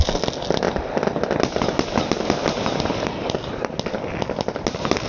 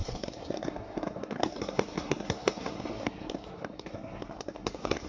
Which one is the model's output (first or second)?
second